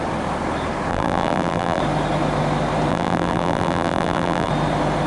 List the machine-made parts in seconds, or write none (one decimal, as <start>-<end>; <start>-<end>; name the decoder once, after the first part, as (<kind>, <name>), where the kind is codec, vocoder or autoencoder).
0.9-1.8 (vocoder, BigVGAN v2); 2.9-4.5